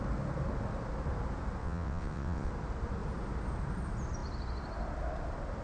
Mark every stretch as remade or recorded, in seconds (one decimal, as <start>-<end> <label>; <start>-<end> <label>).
0.0-1.6 recorded; 1.6-2.5 remade; 2.5-5.6 recorded